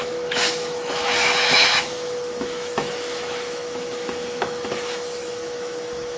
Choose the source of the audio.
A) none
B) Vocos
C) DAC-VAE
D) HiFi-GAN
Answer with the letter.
C